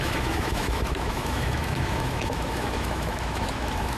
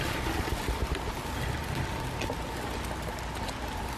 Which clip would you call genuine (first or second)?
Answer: second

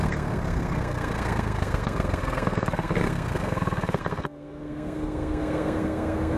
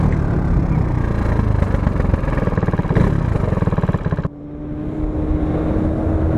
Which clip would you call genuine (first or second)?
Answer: second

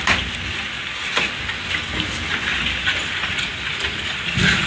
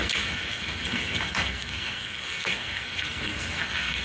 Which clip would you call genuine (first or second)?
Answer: first